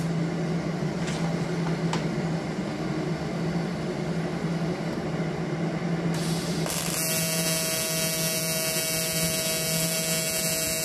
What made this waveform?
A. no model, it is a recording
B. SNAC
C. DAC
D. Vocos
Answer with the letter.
A